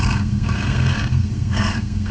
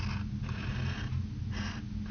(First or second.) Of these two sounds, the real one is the second